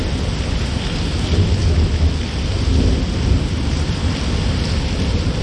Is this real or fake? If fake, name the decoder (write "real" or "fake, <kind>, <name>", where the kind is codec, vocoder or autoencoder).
real